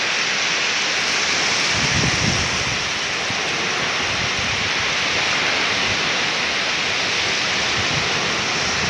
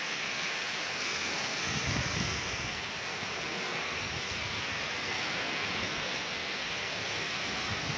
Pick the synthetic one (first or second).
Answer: second